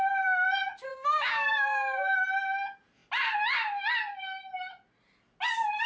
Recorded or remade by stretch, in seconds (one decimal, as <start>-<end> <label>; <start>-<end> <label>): 0.0-0.9 recorded; 0.9-2.2 remade; 2.2-5.9 recorded